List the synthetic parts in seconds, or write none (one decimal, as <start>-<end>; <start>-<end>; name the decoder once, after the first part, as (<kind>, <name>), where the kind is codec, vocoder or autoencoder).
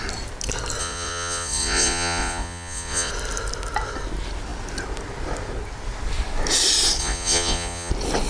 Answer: 0.8-3.1 (vocoder, Vocos); 7.0-7.9